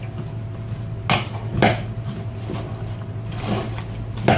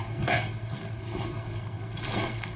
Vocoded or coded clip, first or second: second